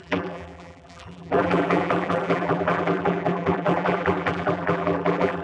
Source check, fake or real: fake